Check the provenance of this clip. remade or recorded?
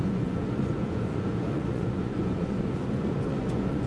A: remade